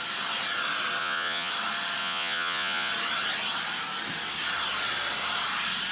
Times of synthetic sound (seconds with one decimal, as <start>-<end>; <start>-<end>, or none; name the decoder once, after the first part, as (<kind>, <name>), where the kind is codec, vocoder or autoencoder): 1.0-1.5 (vocoder, Vocos); 2.0-2.9